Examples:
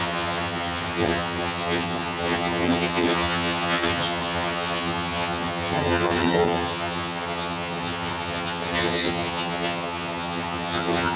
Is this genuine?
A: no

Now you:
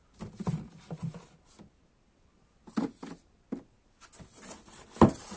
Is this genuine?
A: yes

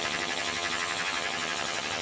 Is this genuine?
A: no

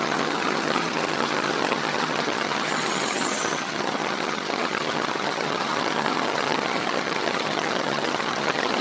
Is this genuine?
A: no